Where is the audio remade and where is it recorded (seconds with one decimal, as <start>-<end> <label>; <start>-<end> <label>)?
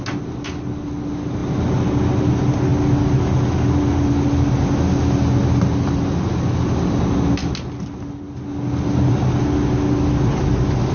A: 0.0-10.9 recorded